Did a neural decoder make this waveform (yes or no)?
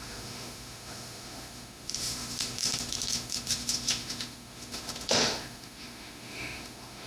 yes